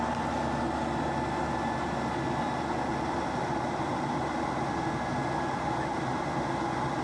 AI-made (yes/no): no